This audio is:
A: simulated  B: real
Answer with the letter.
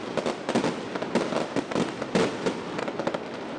B